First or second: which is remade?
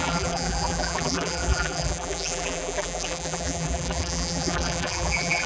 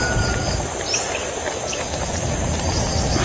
first